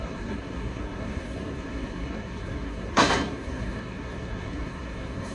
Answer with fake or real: fake